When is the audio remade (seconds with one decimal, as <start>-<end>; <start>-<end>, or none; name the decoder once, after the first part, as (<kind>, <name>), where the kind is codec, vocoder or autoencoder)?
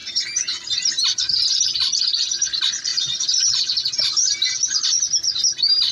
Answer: 0.0-1.4 (vocoder, BigVGAN v2)